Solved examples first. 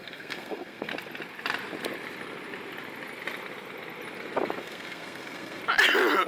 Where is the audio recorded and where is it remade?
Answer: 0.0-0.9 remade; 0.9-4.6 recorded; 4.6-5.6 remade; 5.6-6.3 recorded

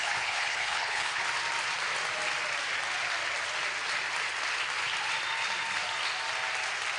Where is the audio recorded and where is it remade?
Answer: 0.0-1.2 remade; 1.2-7.0 recorded

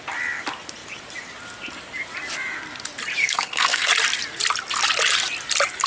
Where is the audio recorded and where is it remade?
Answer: 0.0-3.2 recorded; 3.2-3.9 remade; 3.9-5.9 recorded

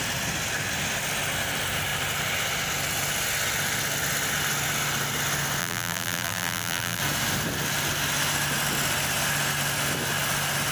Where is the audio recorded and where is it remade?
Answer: 0.0-5.6 recorded; 5.6-7.0 remade; 7.0-10.7 recorded

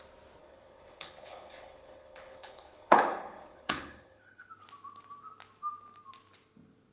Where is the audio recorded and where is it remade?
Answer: 0.0-0.4 recorded; 0.4-4.5 remade; 4.5-6.9 recorded

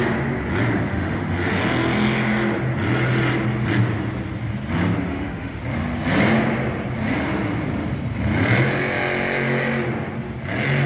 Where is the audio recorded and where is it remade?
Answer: 0.0-0.9 recorded; 0.9-1.6 remade; 1.6-5.1 recorded; 5.1-5.6 remade; 5.6-10.9 recorded